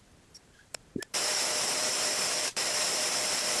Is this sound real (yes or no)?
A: no